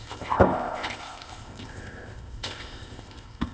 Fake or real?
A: fake